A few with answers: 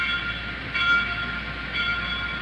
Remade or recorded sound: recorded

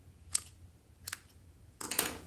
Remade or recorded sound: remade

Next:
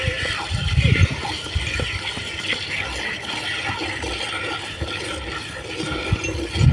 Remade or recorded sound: recorded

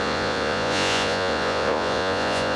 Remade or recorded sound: remade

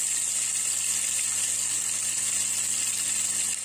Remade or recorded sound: recorded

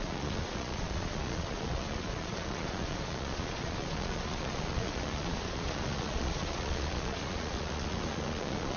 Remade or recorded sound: remade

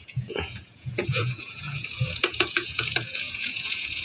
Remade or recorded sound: remade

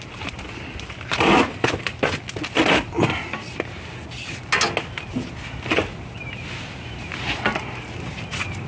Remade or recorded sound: recorded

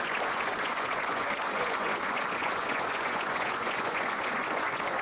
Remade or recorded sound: remade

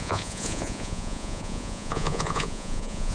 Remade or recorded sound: remade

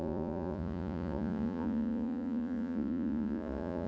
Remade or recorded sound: remade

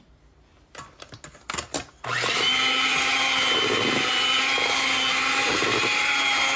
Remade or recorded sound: recorded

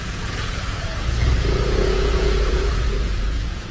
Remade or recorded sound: remade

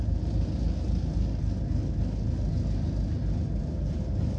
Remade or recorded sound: recorded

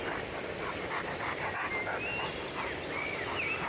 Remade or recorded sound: recorded